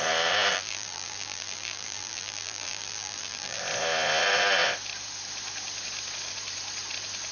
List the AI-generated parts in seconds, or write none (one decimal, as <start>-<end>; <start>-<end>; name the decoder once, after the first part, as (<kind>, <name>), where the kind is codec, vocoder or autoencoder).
0.5-3.6 (vocoder, BigVGAN v2)